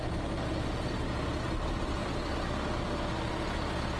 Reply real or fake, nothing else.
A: real